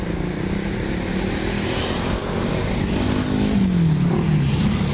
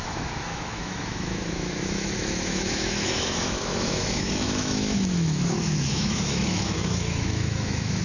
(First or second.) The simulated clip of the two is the second